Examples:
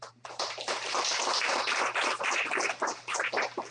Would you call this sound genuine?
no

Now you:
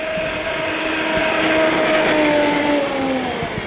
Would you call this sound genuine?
yes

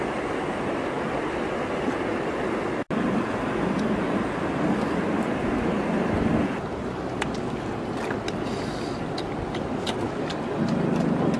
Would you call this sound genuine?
yes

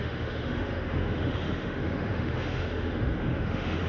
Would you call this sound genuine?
no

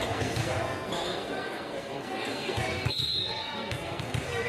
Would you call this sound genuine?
no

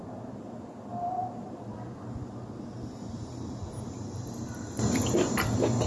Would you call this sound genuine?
yes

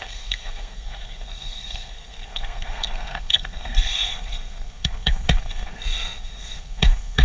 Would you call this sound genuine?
no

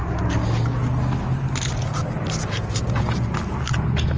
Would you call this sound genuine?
yes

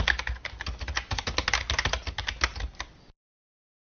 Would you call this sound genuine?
yes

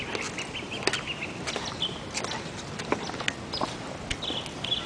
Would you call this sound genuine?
yes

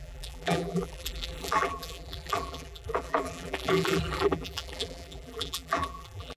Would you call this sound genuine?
no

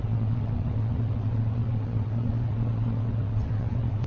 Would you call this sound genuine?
no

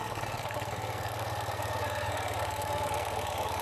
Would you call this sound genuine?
no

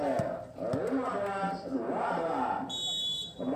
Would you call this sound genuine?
yes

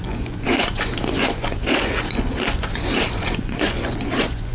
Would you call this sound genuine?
no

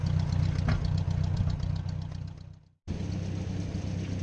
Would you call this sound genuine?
yes